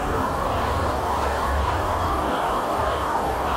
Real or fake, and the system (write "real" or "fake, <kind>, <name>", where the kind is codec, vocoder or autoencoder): fake, codec, DAC